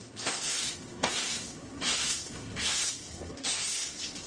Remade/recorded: remade